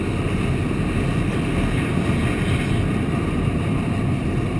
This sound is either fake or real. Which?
real